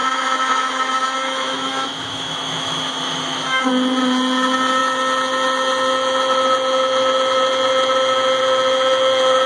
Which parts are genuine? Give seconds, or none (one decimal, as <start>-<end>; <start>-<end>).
3.7-9.5

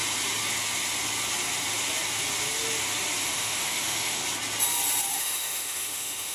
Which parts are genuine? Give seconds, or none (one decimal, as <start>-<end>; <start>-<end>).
0.0-3.2; 4.2-5.2